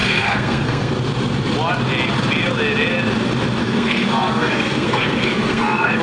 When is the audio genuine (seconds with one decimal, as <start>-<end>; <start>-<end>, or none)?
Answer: 0.9-3.6